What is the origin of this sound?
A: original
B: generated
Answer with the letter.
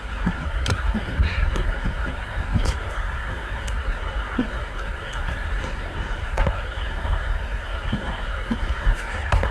B